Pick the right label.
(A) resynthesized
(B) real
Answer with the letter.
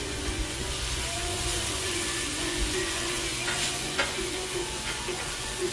A